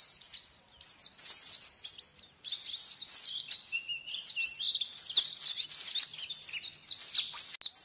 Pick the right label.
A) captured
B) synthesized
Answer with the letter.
A